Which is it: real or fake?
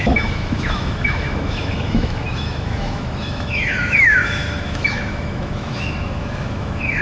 fake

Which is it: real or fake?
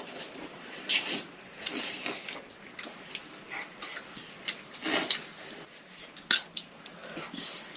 real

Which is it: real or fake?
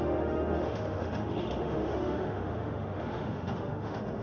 fake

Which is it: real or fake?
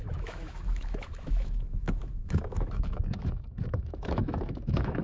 fake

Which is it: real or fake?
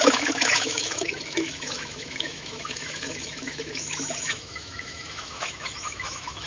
fake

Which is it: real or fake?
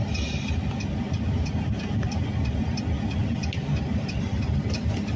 real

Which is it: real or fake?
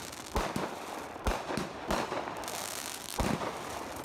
real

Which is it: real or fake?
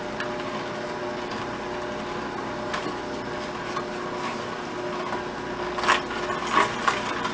real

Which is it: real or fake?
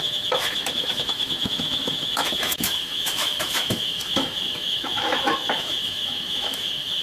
fake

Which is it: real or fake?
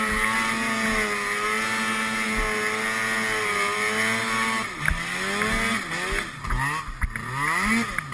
real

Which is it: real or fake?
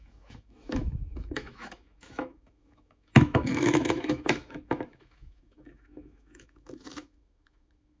fake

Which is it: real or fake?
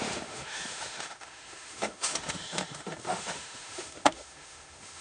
fake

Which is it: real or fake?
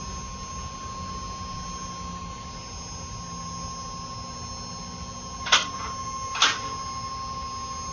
real